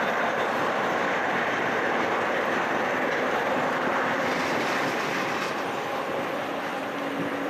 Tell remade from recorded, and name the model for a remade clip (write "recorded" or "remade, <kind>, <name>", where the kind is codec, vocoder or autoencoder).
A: remade, vocoder, BigVGAN v2